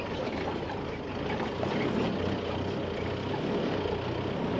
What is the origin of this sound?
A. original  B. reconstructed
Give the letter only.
A